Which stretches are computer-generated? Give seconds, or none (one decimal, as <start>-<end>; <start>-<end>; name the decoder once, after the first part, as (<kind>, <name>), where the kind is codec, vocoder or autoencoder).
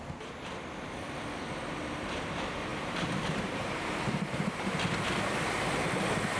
2.7-4.5 (vocoder, BigVGAN v2)